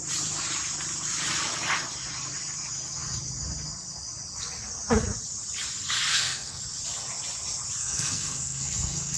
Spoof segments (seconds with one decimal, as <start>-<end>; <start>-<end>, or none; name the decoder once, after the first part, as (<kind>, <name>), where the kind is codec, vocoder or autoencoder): 6.1-6.6 (codec, SNAC); 7.8-9.2